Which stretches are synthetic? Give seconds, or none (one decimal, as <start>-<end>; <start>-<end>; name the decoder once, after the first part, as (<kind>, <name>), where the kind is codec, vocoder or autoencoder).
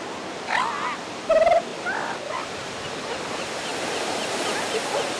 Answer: none